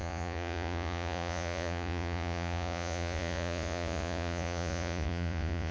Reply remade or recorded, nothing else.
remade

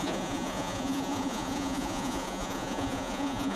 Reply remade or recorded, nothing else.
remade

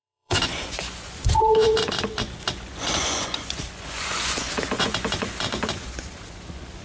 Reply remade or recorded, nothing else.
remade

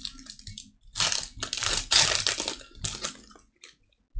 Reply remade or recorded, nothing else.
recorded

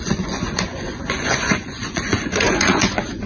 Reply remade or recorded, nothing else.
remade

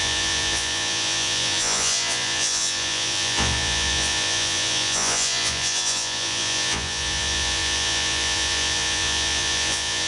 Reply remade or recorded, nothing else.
remade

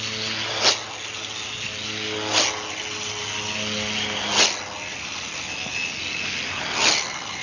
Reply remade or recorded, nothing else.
recorded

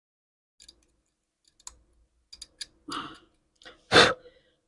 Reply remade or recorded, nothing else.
recorded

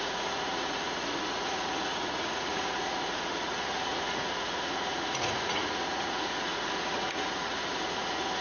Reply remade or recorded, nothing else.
remade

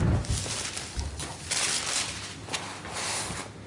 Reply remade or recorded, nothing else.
recorded